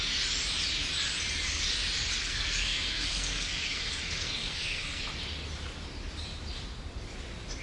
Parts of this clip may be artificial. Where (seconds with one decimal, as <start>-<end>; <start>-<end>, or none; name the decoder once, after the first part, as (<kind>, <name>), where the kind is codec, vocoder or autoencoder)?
2.2-5.0 (codec, SNAC)